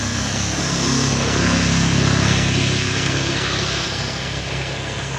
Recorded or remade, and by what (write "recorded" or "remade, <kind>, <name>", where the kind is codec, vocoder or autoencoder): remade, codec, SNAC